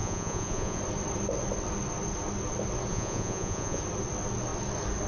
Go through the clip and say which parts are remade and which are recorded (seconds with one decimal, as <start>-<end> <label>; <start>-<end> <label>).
0.0-0.8 remade; 0.8-2.9 recorded; 2.9-3.8 remade; 3.8-5.1 recorded